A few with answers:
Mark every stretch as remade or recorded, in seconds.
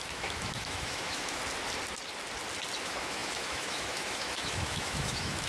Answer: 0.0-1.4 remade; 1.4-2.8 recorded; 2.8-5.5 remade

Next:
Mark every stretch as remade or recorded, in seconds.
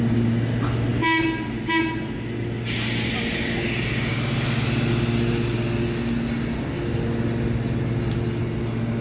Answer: 0.0-9.0 recorded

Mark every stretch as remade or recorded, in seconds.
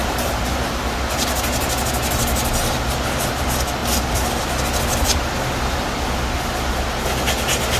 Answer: 0.0-1.0 remade; 1.0-7.8 recorded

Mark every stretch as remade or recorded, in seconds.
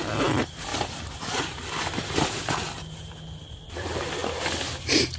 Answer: 0.0-5.2 recorded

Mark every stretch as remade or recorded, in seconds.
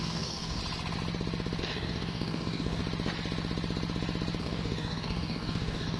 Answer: 0.0-0.6 remade; 0.6-1.6 recorded; 1.6-2.8 remade; 2.8-4.4 recorded; 4.4-6.0 remade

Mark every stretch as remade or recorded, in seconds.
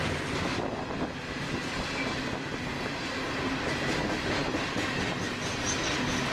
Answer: 0.0-6.3 recorded